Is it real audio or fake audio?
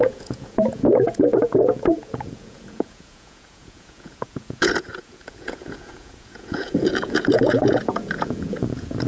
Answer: fake